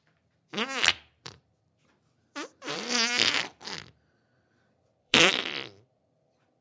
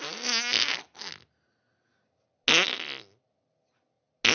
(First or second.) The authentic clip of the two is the second